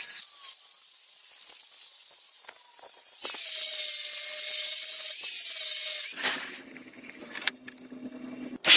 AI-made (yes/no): no